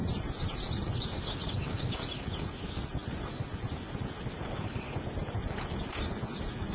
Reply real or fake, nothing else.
real